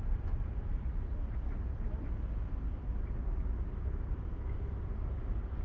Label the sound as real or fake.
real